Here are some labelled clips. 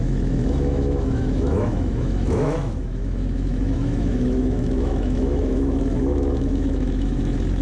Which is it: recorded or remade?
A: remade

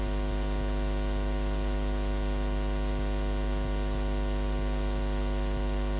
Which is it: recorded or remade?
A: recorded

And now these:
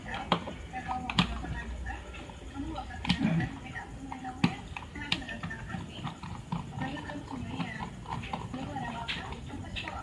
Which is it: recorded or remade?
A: recorded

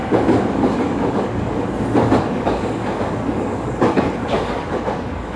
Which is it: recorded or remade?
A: remade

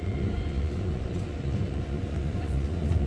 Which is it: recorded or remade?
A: remade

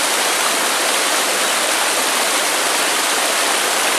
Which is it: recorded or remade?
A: recorded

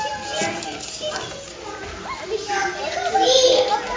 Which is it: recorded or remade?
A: recorded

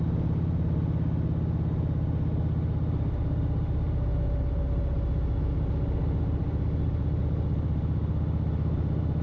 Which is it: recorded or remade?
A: recorded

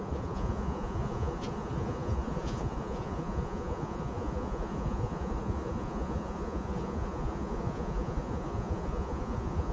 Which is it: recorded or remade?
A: remade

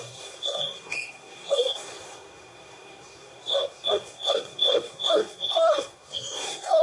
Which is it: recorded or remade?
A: remade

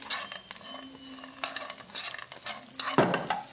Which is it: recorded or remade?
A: recorded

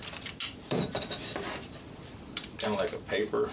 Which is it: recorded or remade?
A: remade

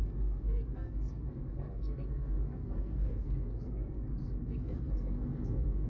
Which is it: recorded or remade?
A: remade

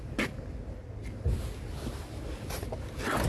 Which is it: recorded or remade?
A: recorded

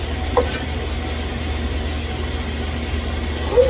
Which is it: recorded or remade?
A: recorded